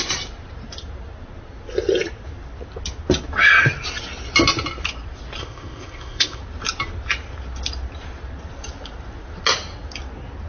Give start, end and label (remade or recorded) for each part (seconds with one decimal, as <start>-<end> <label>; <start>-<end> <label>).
0.0-5.4 recorded; 5.4-6.4 remade; 6.4-10.5 recorded

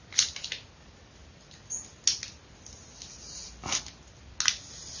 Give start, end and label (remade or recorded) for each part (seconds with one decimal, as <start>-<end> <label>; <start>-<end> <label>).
0.0-5.0 recorded

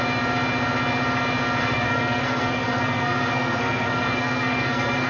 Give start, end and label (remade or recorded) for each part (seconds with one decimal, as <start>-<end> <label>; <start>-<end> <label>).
0.0-1.6 recorded; 1.6-5.1 remade

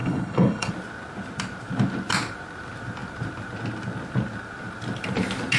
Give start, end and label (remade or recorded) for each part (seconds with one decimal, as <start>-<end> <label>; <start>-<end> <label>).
0.0-0.7 remade; 0.7-5.6 recorded

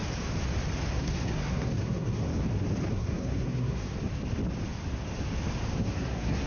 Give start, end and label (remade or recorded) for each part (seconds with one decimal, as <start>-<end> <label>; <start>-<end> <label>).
0.0-0.9 recorded; 0.9-2.3 remade; 2.3-2.9 recorded; 2.9-3.9 remade; 3.9-5.8 recorded; 5.8-6.5 remade

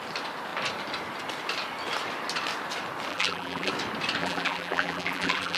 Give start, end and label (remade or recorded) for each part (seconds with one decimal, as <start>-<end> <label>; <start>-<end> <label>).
0.0-3.1 recorded; 3.1-3.7 remade; 3.7-4.2 recorded; 4.2-5.6 remade

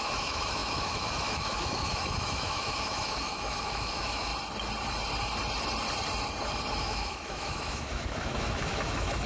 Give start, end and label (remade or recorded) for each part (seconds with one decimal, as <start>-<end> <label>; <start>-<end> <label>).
0.0-4.3 remade; 4.3-6.8 recorded; 6.8-9.3 remade

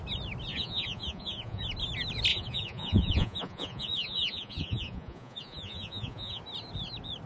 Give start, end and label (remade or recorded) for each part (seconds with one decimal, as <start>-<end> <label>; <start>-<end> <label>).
0.0-0.5 recorded; 0.5-1.6 remade; 1.6-2.3 recorded; 2.3-6.4 remade; 6.4-7.3 recorded